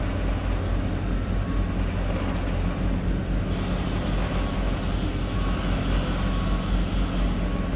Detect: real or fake real